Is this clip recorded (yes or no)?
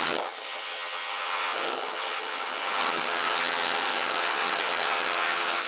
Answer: no